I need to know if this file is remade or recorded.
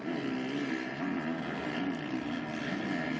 recorded